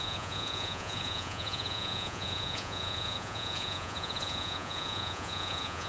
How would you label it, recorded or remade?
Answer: remade